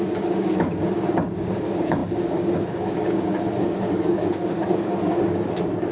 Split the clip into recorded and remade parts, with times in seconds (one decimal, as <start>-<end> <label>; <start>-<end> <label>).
0.0-5.9 remade